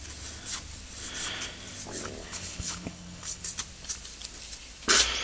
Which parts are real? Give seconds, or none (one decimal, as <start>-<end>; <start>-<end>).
0.0-2.2; 3.4-5.2